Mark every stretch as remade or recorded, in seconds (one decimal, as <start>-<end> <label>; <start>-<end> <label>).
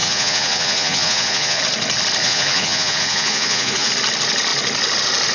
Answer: 0.0-1.6 remade; 1.6-2.2 recorded; 2.2-3.9 remade; 3.9-5.3 recorded